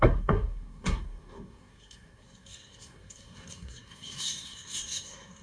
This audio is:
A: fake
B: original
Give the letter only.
A